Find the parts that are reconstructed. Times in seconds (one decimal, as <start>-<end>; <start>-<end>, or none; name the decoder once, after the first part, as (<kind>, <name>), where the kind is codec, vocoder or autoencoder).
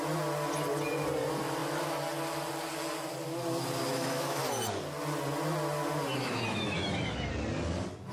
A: 3.9-4.4 (autoencoder, DAC-VAE); 6.1-7.3